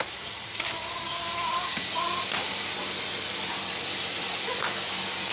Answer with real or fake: fake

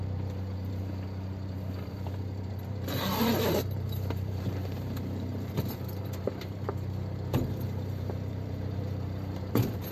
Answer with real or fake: fake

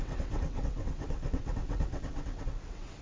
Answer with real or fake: fake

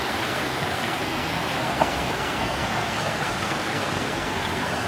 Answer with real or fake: fake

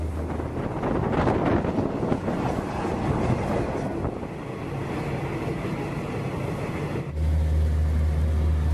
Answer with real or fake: real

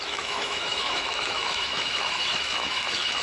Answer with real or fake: fake